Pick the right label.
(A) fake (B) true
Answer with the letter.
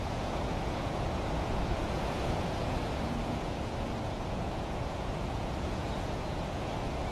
A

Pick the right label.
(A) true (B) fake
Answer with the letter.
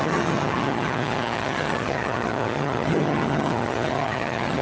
B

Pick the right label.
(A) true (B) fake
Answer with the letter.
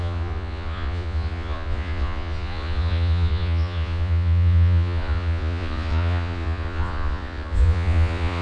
B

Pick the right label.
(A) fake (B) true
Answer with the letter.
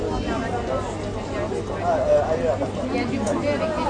B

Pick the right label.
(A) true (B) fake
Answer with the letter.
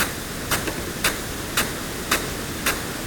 A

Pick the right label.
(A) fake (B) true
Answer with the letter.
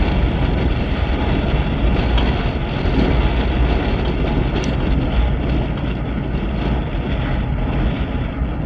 B